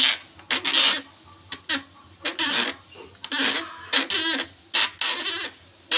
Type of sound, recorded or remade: recorded